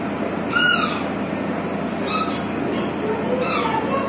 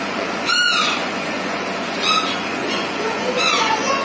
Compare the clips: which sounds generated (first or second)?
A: second